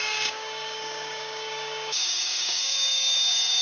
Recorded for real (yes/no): no